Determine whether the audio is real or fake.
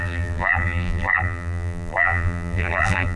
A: fake